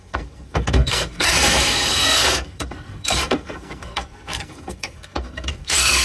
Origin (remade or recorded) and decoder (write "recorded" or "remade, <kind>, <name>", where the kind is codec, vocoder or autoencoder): remade, codec, SNAC